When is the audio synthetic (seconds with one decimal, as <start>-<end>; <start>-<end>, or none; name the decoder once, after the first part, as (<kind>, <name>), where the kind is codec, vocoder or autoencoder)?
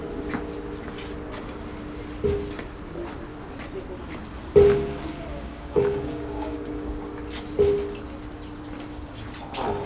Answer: 5.3-7.2 (codec, DAC)